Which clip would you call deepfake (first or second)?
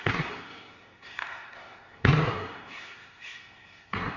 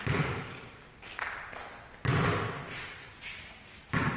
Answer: first